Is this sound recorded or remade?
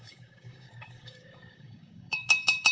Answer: remade